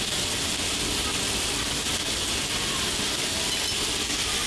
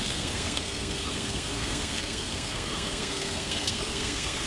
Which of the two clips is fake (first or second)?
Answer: second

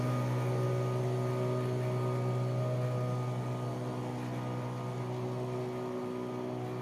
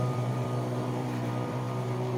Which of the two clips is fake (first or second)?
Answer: second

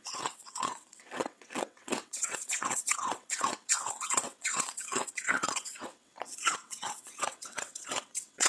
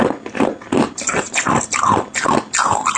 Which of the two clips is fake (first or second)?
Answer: first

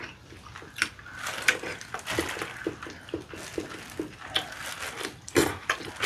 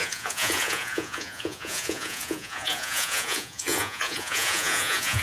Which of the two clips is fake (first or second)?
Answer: second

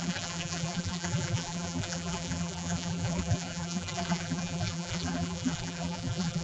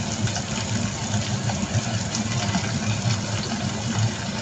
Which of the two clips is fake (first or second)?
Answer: first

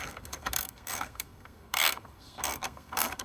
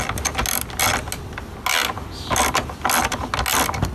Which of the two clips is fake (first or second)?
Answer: first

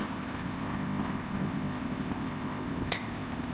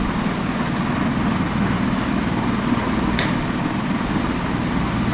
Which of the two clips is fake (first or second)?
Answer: first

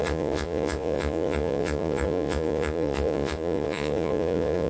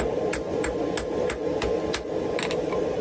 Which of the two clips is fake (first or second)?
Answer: first